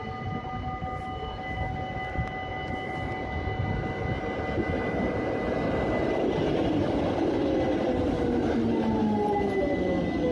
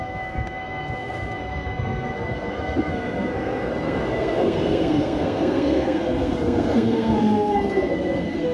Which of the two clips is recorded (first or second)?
first